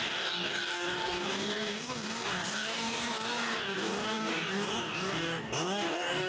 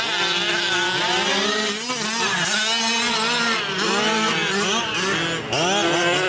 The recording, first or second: second